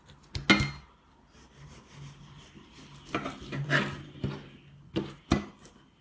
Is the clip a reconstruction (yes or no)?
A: no